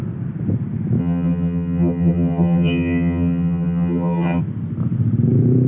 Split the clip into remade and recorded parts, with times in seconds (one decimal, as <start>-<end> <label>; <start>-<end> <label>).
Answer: 0.0-1.0 recorded; 1.0-4.4 remade; 4.4-5.7 recorded